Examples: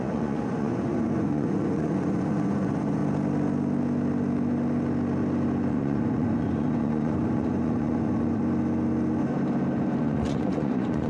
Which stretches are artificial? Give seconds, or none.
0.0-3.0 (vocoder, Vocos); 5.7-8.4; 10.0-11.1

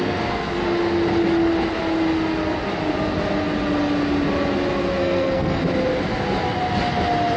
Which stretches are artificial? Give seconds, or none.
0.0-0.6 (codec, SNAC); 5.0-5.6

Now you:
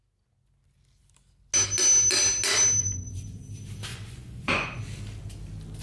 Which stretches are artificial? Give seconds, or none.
2.8-3.4 (vocoder, Vocos); 3.9-4.8

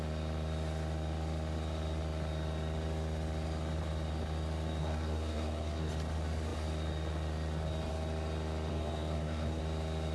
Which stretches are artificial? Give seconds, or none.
4.8-5.9 (codec, SNAC); 8.7-9.6

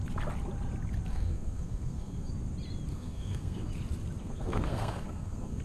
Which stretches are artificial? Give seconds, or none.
1.1-2.3 (codec, SNAC); 2.9-3.7; 4.2-5.6

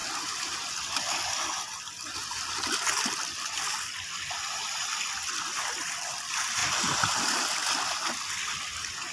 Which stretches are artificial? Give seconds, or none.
none

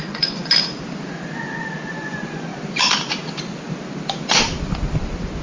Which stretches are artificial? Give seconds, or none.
0.0-0.4 (vocoder, Vocos); 1.9-2.5

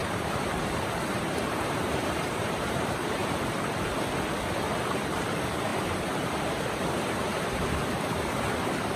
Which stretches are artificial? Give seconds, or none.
0.0-3.2 (vocoder, BigVGAN v2); 4.9-9.0